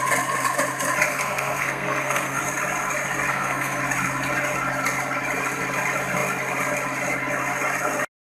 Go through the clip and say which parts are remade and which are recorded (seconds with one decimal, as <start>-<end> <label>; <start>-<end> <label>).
0.0-1.1 recorded; 1.1-2.4 remade; 2.4-3.3 recorded; 3.3-3.8 remade; 3.8-8.3 recorded